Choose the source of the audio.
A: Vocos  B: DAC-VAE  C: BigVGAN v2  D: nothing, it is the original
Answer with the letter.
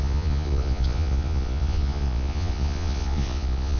A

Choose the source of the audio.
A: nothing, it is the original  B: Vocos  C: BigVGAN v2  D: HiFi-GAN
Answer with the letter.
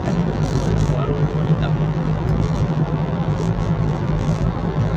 C